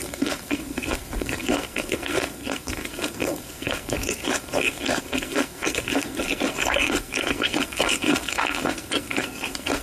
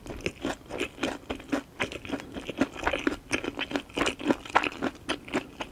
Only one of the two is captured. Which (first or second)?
second